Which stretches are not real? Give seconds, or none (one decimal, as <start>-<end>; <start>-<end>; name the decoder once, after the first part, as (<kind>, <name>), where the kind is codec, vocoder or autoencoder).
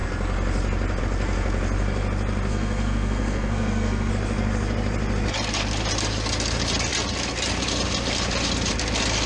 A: 2.5-4.1 (codec, SNAC)